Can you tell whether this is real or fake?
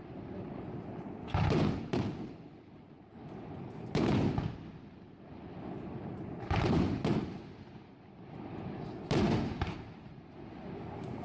real